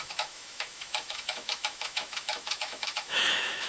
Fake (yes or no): yes